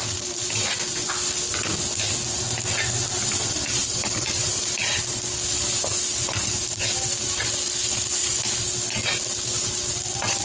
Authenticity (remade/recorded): recorded